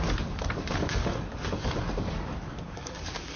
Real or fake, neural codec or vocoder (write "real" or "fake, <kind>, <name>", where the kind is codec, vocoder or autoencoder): fake, codec, DAC